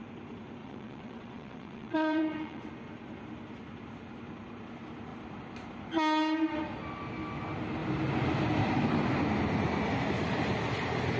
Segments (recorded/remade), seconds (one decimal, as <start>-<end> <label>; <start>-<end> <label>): 0.0-0.6 recorded; 0.6-2.7 remade; 2.7-11.2 recorded